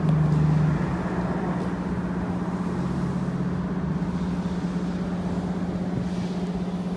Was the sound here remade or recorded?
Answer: recorded